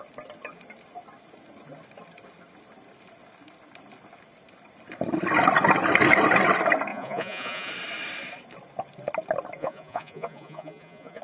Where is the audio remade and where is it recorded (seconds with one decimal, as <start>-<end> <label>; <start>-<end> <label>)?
0.0-6.9 recorded; 6.9-7.7 remade; 7.7-9.6 recorded; 9.6-11.2 remade

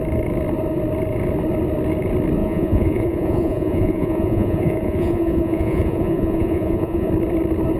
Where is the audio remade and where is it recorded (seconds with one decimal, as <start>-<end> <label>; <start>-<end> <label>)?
0.0-2.4 recorded; 2.4-7.1 remade; 7.1-7.8 recorded